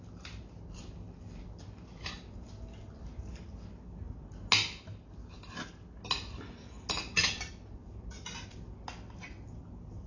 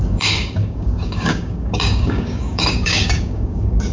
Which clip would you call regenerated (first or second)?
second